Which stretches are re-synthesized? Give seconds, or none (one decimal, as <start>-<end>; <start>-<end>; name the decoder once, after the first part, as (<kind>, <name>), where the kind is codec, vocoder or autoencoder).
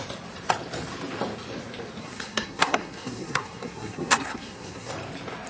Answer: 2.0-4.9 (codec, SNAC)